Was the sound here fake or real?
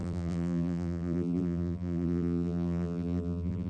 fake